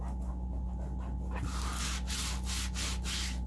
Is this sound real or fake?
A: real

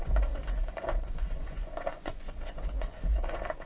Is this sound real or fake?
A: fake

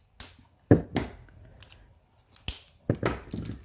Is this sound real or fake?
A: real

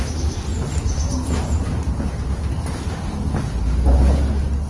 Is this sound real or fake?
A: real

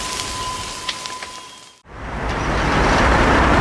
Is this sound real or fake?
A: real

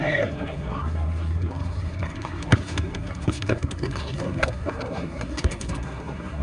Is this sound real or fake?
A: fake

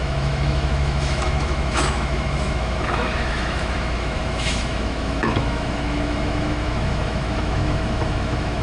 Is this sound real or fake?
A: fake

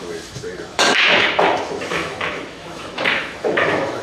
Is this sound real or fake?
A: fake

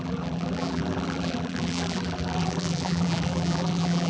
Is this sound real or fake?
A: fake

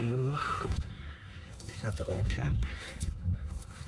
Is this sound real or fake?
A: fake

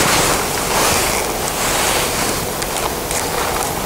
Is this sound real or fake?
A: real